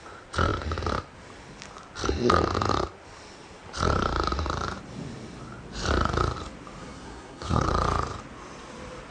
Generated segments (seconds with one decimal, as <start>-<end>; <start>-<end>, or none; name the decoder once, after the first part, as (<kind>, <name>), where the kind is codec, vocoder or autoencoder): 6.8-7.7 (codec, SNAC)